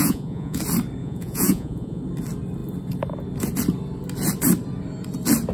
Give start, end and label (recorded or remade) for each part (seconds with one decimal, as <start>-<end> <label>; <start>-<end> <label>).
0.0-0.6 remade; 0.6-1.0 recorded; 1.0-2.0 remade; 2.0-5.5 recorded